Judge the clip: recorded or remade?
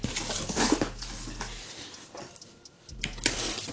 recorded